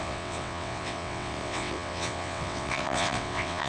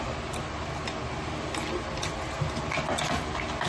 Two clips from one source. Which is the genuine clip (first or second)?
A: second